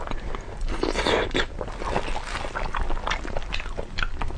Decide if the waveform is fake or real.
real